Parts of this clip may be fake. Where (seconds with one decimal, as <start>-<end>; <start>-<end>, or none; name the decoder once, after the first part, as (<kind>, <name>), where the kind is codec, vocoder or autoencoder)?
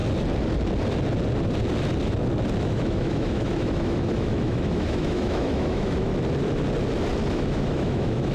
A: 2.6-6.1 (autoencoder, DAC-VAE); 7.3-8.3